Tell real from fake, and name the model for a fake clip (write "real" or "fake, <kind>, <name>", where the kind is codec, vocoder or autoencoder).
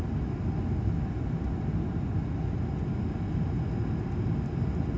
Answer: real